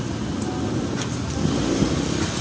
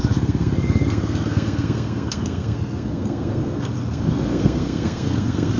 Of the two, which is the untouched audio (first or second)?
first